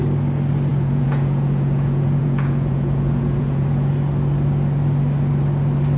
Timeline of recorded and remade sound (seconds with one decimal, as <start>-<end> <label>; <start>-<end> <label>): 0.0-0.7 recorded; 0.7-3.9 remade; 3.9-6.0 recorded